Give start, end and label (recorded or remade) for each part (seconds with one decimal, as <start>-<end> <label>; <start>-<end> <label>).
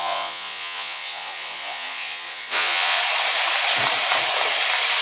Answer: 0.0-3.0 remade; 3.0-5.0 recorded